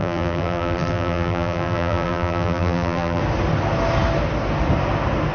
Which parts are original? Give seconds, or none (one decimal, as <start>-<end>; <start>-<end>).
3.2-5.3